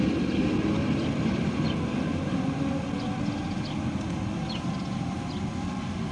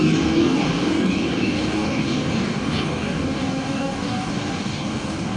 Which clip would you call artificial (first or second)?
second